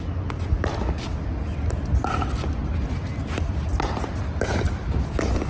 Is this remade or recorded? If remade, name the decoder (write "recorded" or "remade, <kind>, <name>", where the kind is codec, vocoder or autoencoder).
recorded